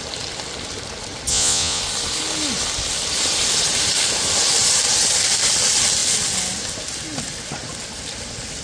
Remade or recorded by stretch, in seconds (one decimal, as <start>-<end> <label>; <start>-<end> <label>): 0.0-1.3 recorded; 1.3-1.8 remade; 1.8-8.6 recorded